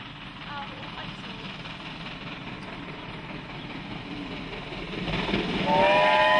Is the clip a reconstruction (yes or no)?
no